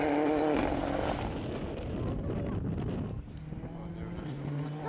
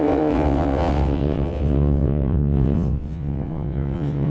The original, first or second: first